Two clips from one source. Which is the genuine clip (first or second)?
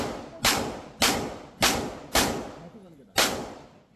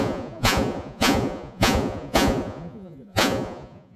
first